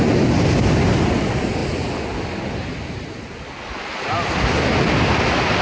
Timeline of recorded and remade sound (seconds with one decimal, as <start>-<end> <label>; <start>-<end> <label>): 0.0-5.6 recorded